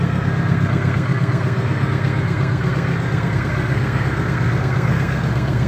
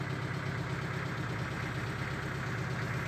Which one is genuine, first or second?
second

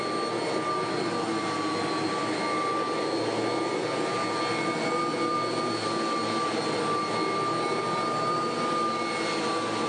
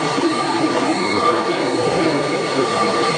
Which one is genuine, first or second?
first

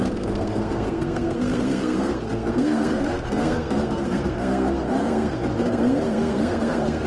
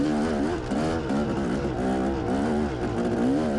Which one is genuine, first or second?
second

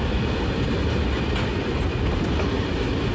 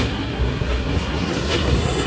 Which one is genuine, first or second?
first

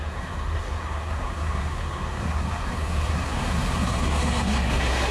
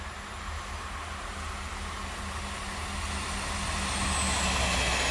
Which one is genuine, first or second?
second